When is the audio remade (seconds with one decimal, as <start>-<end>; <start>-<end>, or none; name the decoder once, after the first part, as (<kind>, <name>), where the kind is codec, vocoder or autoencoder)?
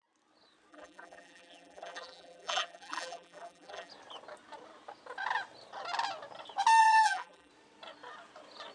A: 0.7-3.9 (vocoder, BigVGAN v2); 6.8-7.5